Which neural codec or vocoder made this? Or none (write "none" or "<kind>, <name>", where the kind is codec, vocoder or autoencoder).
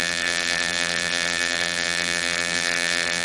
vocoder, BigVGAN v2